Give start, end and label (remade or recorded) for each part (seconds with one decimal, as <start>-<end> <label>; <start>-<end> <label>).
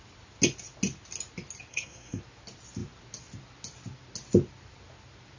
0.0-1.7 recorded; 1.7-2.2 remade; 2.2-5.4 recorded